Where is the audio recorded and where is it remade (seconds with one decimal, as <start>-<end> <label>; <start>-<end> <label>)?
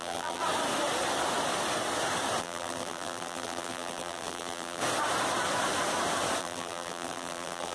0.0-0.4 remade; 0.4-2.4 recorded; 2.4-4.8 remade; 4.8-6.4 recorded; 6.4-7.7 remade